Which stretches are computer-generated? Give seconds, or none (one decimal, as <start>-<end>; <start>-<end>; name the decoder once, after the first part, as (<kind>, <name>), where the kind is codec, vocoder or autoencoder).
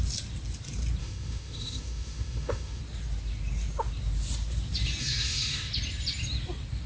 1.0-2.8 (autoencoder, DAC-VAE); 5.0-5.7